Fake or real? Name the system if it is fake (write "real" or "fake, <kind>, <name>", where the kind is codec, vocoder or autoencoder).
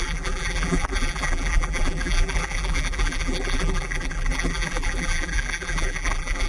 fake, vocoder, BigVGAN v2